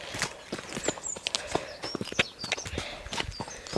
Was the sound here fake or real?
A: real